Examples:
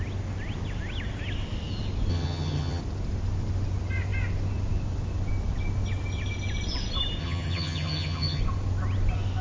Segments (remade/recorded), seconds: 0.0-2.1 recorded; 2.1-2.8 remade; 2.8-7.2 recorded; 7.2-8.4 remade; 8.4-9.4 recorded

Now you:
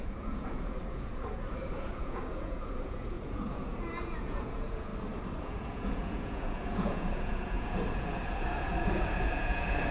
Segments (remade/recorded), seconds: 0.0-4.9 remade; 4.9-5.4 recorded; 5.4-9.9 remade

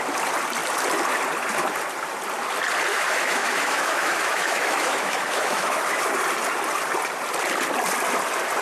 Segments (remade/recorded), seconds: 0.0-2.9 recorded; 2.9-6.0 remade; 6.0-8.6 recorded

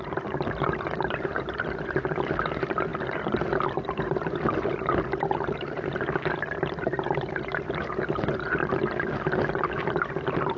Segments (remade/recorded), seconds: 0.0-2.9 remade; 2.9-3.9 recorded; 3.9-8.6 remade; 8.6-10.1 recorded; 10.1-10.6 remade

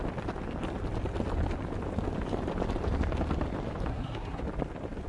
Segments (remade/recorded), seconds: 0.0-3.9 recorded; 3.9-4.4 remade; 4.4-5.1 recorded

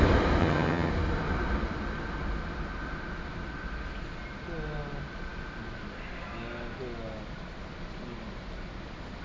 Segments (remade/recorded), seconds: 0.0-0.4 recorded; 0.4-0.9 remade; 0.9-9.2 recorded